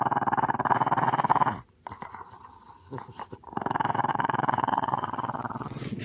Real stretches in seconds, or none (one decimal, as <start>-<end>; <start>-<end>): 0.0-4.1